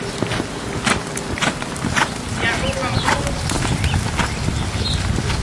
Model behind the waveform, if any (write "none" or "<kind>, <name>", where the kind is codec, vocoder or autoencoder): none